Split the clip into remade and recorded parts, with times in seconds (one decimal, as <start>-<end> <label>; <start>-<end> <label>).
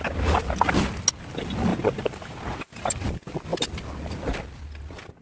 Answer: 0.0-1.7 recorded; 1.7-2.9 remade; 2.9-5.2 recorded